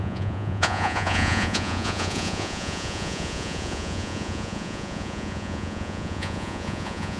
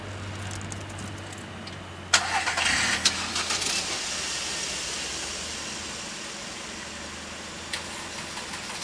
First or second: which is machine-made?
first